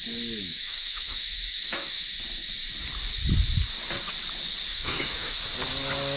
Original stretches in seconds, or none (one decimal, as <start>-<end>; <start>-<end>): 0.0-0.5; 2.0-4.7; 5.4-6.2